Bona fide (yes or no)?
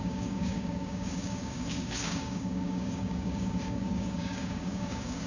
no